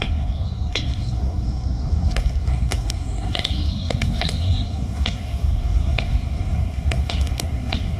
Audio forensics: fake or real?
fake